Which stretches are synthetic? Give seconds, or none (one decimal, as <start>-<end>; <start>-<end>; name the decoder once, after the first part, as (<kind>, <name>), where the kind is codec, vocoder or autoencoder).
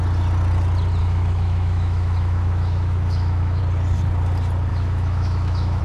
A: 1.0-3.6 (autoencoder, DAC-VAE); 4.7-5.8